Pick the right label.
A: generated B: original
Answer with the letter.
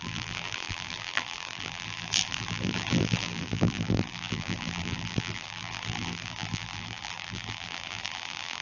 A